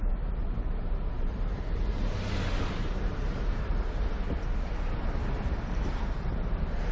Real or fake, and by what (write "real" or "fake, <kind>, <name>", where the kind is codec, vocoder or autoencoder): fake, vocoder, BigVGAN v2